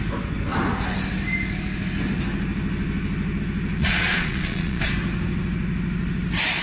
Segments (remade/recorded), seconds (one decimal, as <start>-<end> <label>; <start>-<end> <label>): 0.0-3.8 recorded; 3.8-4.8 remade; 4.8-6.6 recorded